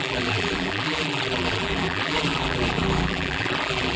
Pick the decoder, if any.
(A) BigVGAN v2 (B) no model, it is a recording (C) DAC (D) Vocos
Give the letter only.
A